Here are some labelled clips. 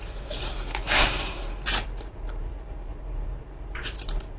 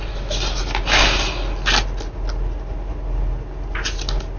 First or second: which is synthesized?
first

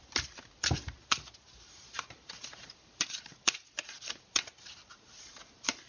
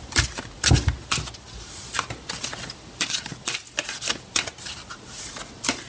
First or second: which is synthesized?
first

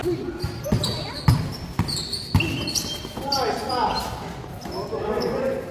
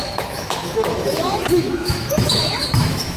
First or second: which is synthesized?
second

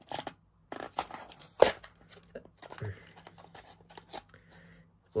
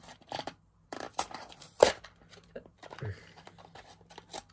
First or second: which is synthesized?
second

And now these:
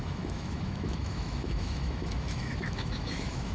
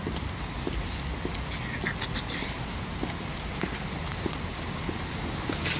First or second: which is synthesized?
first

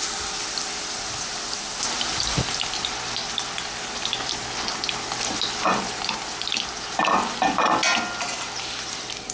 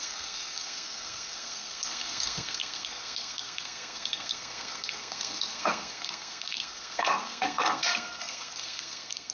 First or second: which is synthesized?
second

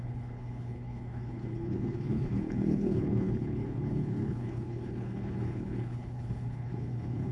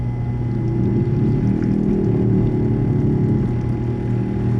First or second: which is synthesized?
first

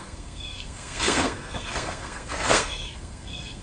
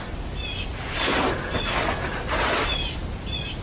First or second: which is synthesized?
first